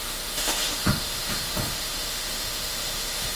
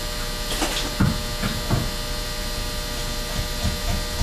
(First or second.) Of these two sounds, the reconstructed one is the first